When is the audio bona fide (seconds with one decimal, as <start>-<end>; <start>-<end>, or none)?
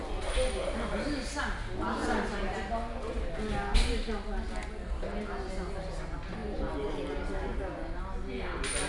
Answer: 0.0-8.9